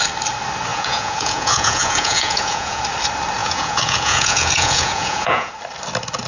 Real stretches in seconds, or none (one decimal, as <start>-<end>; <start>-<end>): 0.0-0.7; 2.8-3.4; 5.5-6.3